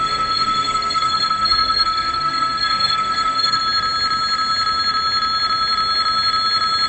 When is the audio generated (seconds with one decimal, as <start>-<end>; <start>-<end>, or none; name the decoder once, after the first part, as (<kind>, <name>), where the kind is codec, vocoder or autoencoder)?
0.0-3.6 (codec, SNAC)